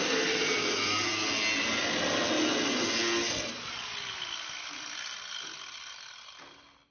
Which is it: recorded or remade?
recorded